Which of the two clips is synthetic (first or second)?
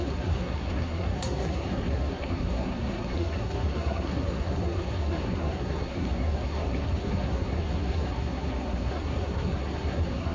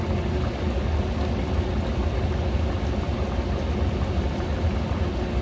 first